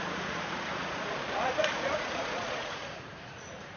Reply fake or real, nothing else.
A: fake